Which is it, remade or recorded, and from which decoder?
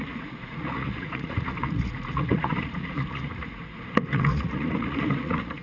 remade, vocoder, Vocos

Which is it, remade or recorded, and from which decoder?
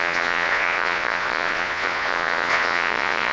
remade, vocoder, Vocos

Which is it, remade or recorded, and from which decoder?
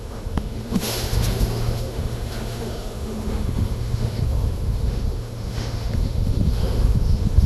remade, autoencoder, DAC-VAE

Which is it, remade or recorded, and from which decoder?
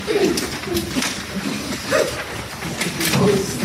recorded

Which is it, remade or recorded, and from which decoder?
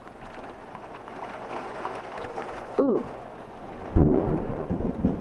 remade, vocoder, Vocos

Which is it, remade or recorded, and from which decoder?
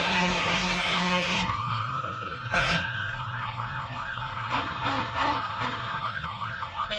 remade, codec, SNAC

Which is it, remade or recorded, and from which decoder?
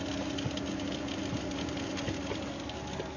recorded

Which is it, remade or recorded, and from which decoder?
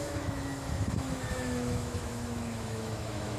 remade, autoencoder, DAC-VAE